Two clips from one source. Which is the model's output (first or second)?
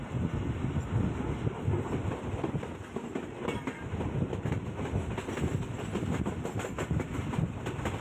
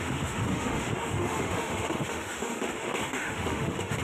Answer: second